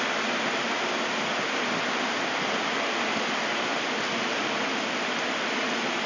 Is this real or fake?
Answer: real